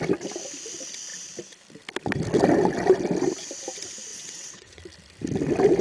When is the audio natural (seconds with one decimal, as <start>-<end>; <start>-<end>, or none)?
0.0-4.1; 4.8-5.8